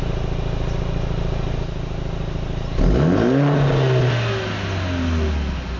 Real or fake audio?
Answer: real